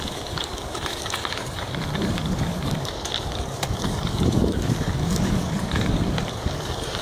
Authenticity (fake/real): fake